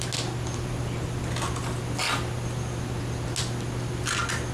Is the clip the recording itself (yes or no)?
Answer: yes